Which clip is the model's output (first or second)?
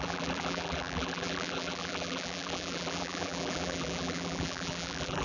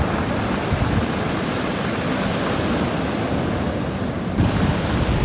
first